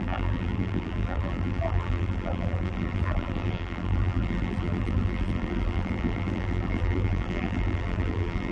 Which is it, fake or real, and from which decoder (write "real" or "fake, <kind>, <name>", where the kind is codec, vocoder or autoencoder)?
fake, vocoder, BigVGAN v2